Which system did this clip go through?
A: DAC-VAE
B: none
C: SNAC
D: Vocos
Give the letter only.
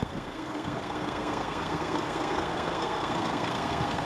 C